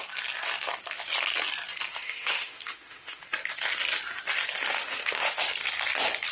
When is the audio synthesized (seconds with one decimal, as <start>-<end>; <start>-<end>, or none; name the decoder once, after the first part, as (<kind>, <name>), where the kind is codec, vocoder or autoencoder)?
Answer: 1.9-3.2 (autoencoder, DAC-VAE); 4.6-5.4